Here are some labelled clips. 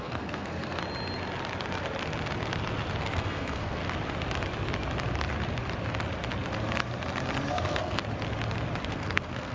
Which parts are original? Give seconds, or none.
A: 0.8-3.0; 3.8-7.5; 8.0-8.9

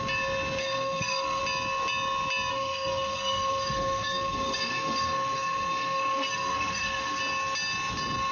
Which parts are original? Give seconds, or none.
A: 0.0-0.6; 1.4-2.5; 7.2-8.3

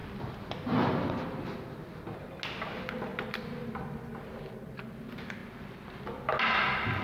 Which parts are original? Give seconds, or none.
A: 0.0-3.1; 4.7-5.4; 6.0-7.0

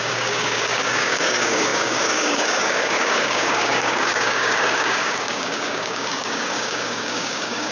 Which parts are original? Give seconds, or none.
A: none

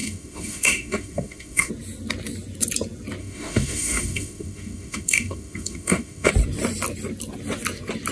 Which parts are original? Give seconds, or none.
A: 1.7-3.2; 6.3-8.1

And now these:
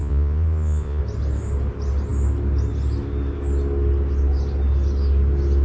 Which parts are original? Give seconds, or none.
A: 1.0-5.6

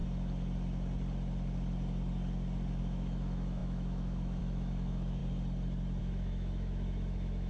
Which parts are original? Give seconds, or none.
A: 0.0-2.8; 5.2-6.0